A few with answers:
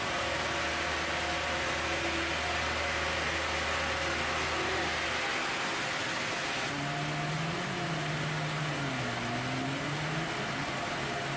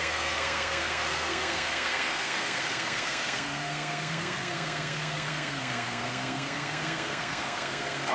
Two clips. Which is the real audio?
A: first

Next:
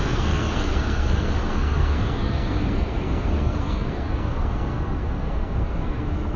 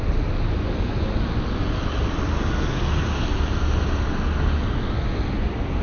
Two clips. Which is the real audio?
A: second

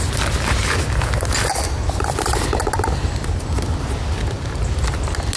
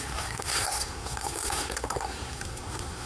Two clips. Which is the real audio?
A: first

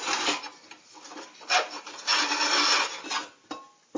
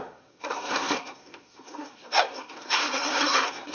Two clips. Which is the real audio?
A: first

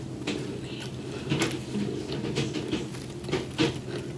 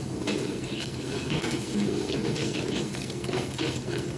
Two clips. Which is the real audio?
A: first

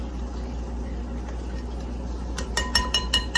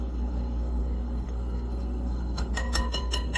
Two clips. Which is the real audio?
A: first